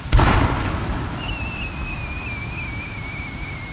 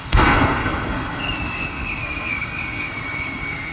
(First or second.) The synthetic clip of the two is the second